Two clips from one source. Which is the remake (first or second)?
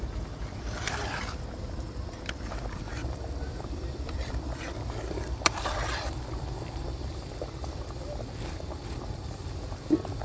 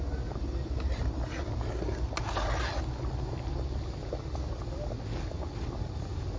first